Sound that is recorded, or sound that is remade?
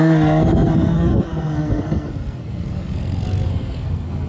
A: remade